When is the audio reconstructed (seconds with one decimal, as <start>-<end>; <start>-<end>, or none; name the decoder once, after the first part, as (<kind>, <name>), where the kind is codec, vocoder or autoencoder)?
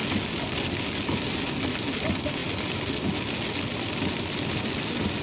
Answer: none